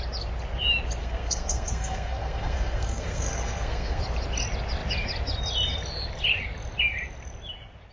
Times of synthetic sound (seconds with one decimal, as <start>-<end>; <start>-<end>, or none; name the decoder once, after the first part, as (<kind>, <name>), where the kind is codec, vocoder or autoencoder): 1.0-4.0 (codec, SNAC)